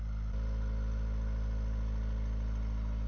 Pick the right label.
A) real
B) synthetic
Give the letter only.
A